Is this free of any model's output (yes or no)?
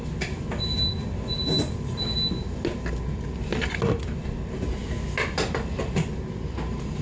yes